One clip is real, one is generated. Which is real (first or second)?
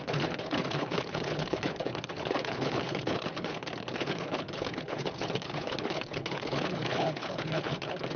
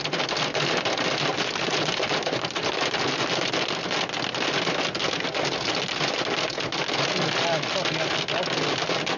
second